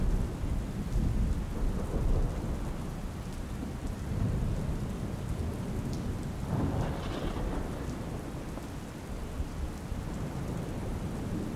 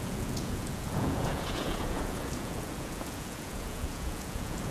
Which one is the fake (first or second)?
second